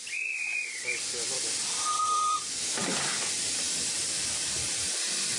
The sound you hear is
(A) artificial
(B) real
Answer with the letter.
A